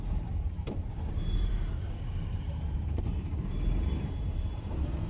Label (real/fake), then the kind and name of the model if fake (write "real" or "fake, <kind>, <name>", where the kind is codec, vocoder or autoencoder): fake, vocoder, BigVGAN v2